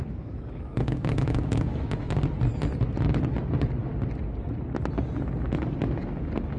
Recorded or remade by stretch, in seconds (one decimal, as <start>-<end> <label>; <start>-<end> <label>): 0.0-2.2 remade; 2.2-6.6 recorded